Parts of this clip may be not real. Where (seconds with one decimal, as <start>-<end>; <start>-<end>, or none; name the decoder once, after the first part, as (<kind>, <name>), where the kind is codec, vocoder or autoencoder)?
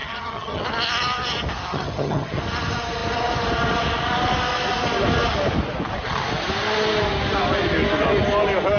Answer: 0.0-0.6 (vocoder, HiFi-GAN); 1.7-2.4